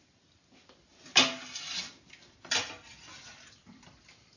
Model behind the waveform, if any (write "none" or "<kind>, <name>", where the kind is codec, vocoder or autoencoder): none